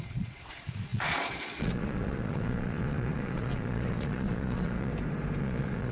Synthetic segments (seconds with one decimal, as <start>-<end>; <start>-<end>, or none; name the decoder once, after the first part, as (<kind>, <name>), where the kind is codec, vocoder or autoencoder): 0.0-4.9 (vocoder, Vocos); 5.4-5.9